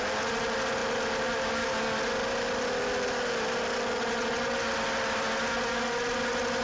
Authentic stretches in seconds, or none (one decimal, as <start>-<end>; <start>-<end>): 0.0-6.6